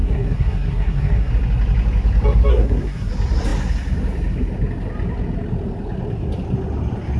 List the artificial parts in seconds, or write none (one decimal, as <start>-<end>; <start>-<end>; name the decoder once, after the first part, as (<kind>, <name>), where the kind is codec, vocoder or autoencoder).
0.0-1.3 (codec, SNAC); 2.5-3.1